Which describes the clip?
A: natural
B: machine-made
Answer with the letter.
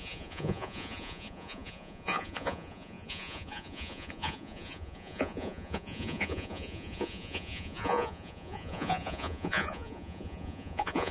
B